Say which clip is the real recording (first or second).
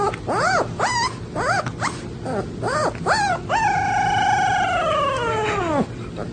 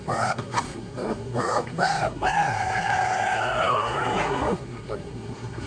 first